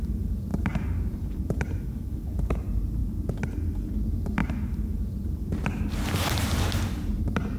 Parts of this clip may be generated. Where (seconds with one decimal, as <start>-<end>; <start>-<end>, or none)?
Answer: 0.0-3.0; 3.9-7.6

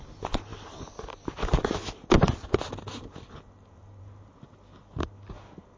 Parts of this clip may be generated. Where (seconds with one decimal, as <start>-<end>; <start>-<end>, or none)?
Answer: none

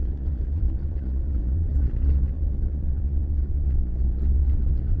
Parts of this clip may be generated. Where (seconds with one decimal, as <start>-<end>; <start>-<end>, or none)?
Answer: 0.0-5.0

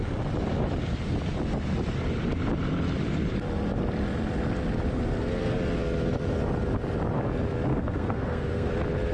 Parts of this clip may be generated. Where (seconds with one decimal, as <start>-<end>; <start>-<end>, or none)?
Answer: 7.7-8.7

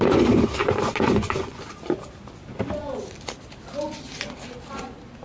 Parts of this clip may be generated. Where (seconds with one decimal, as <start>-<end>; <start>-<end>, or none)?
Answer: 0.6-1.7

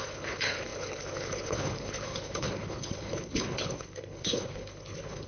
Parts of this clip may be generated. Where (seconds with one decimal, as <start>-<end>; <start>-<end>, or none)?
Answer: 0.0-5.3